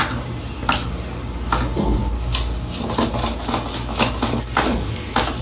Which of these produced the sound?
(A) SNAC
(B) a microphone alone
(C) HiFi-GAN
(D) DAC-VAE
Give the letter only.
B